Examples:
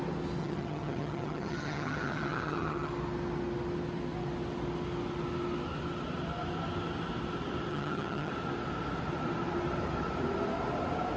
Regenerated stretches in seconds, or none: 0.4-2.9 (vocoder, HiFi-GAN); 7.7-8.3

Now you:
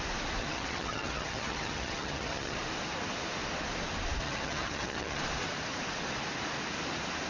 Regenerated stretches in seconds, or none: 0.4-2.6 (vocoder, HiFi-GAN); 4.2-5.2